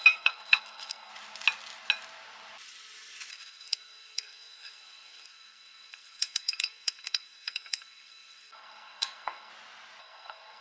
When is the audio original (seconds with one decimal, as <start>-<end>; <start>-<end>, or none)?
1.1-3.3; 9.5-10.0